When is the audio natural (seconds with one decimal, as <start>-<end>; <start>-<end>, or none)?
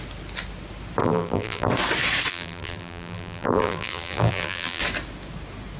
0.0-1.0; 1.7-2.3; 4.8-5.8